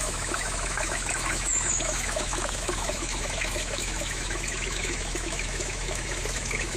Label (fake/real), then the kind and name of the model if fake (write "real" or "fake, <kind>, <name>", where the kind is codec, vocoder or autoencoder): fake, autoencoder, DAC-VAE